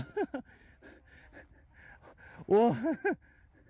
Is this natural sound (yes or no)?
yes